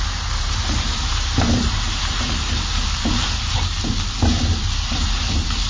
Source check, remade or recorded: remade